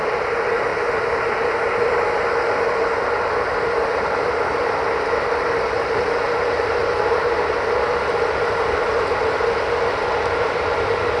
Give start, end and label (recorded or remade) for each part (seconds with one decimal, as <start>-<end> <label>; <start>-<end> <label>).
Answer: 0.0-11.2 recorded